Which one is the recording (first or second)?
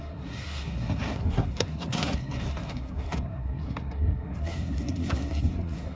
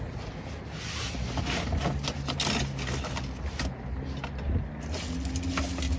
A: second